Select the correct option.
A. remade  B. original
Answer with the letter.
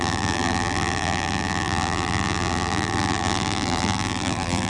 A